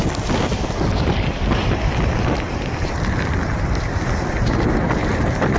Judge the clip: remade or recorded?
recorded